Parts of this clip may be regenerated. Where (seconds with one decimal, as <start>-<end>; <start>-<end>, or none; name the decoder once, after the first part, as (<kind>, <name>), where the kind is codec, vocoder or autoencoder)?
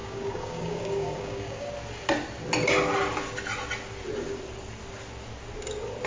0.0-1.7 (codec, DAC)